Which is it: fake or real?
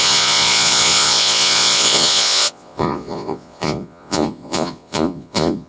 fake